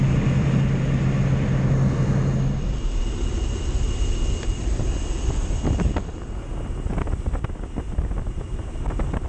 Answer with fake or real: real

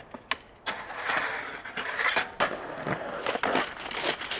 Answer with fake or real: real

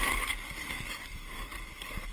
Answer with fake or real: fake